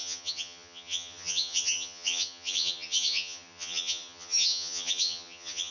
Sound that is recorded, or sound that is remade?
remade